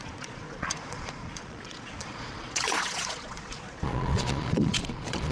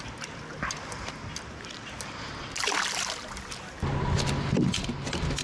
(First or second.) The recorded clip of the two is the second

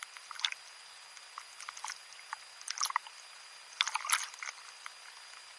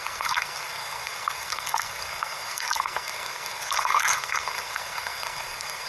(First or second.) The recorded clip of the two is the first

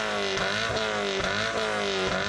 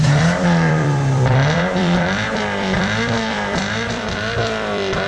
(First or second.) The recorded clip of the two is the first